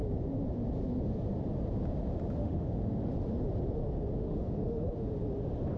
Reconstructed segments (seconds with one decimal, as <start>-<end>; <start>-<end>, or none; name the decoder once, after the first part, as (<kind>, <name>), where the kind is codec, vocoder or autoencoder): 2.4-3.1 (autoencoder, DAC-VAE); 4.2-4.8